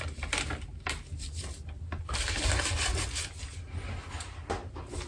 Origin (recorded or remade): recorded